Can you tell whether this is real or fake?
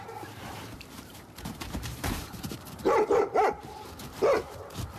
fake